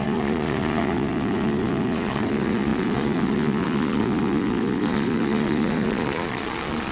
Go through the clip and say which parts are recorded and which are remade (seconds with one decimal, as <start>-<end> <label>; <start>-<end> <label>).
0.0-6.9 remade